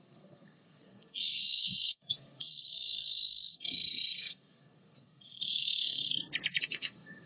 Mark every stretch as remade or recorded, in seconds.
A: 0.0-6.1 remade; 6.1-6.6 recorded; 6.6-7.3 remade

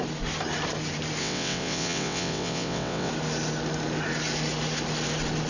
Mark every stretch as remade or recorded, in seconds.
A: 0.0-1.2 recorded; 1.2-3.1 remade; 3.1-5.5 recorded

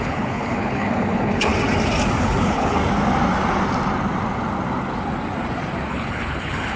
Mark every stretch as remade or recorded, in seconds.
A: 0.0-1.5 remade; 1.5-2.2 recorded; 2.2-2.8 remade; 2.8-5.9 recorded; 5.9-6.8 remade

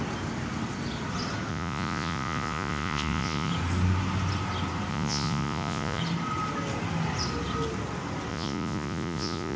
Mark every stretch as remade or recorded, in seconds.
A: 0.0-1.5 recorded; 1.5-3.5 remade; 3.5-4.9 recorded; 4.9-6.0 remade; 6.0-8.3 recorded; 8.3-9.6 remade

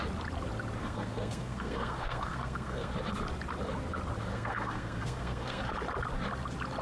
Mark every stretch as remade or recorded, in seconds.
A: 0.0-0.8 recorded; 0.8-2.9 remade; 2.9-4.3 recorded; 4.3-5.6 remade; 5.6-6.8 recorded

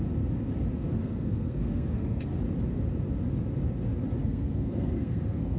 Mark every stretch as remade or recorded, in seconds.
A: 0.0-1.0 recorded; 1.0-2.2 remade; 2.2-4.2 recorded; 4.2-5.6 remade

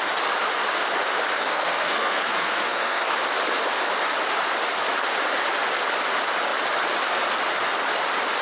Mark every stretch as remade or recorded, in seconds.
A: 0.0-1.4 recorded; 1.4-3.1 remade; 3.1-8.4 recorded